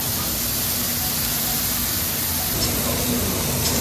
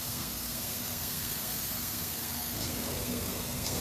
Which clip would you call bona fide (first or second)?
first